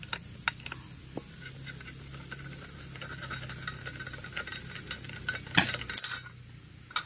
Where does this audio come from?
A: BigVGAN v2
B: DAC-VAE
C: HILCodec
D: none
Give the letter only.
D